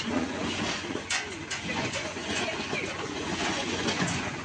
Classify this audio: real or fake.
fake